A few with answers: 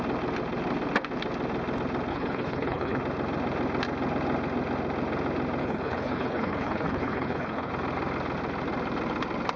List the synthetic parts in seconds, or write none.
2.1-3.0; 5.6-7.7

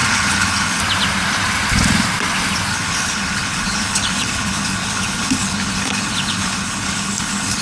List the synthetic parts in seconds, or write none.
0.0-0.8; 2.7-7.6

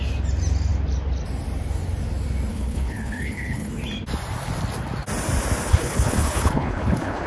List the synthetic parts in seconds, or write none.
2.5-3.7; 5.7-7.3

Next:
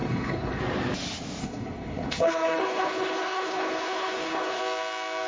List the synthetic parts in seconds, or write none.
0.0-0.6; 1.4-4.6